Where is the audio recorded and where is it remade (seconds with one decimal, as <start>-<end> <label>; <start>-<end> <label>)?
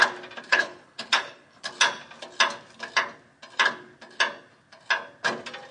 0.0-0.5 recorded; 0.5-1.7 remade; 1.7-5.7 recorded